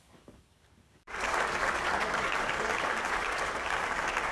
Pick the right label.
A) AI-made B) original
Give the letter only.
A